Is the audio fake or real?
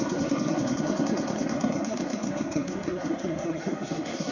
fake